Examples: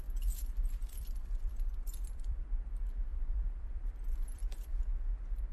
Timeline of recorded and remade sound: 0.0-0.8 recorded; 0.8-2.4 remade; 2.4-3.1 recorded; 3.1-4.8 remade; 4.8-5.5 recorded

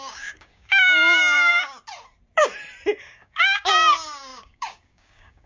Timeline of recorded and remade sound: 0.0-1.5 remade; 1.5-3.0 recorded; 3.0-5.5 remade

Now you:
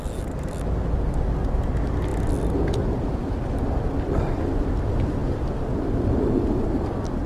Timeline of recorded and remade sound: 0.0-7.3 recorded

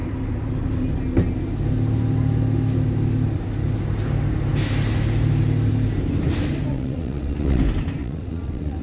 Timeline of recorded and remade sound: 0.0-6.7 recorded; 6.7-7.6 remade; 7.6-8.0 recorded; 8.0-8.8 remade

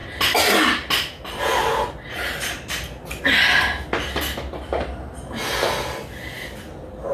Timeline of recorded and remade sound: 0.0-7.1 recorded